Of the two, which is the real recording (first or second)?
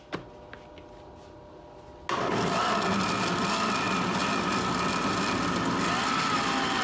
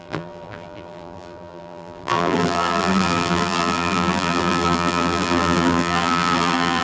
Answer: first